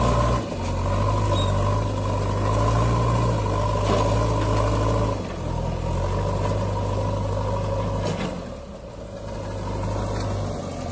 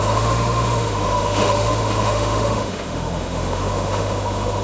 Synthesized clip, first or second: second